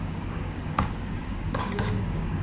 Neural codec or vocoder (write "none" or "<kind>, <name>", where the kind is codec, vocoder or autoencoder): codec, DAC